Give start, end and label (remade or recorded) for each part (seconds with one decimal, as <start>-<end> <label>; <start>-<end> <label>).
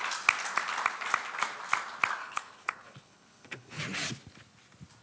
0.0-2.2 recorded; 2.2-3.8 remade; 3.8-5.0 recorded